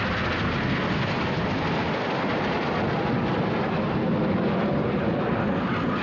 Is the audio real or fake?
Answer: real